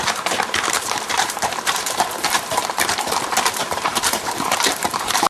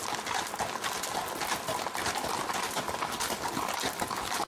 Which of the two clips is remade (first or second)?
first